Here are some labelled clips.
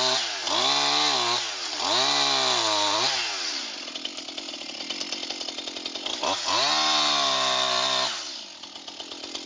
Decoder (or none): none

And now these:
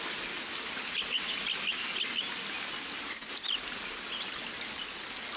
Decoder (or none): none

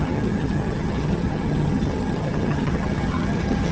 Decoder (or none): vocoder, HiFi-GAN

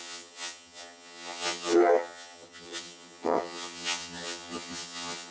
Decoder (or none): vocoder, HiFi-GAN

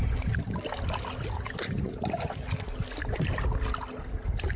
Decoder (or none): none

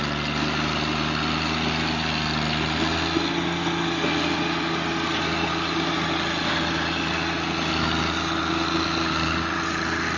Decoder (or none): none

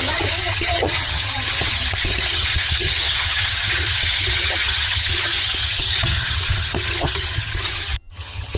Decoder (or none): vocoder, HiFi-GAN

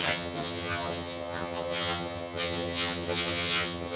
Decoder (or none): vocoder, HiFi-GAN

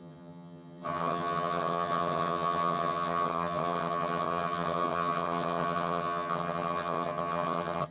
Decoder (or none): vocoder, HiFi-GAN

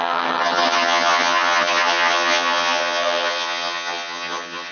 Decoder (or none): vocoder, HiFi-GAN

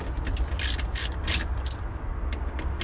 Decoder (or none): none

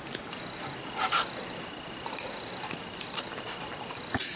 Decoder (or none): none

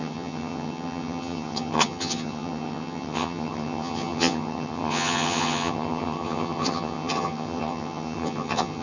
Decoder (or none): vocoder, HiFi-GAN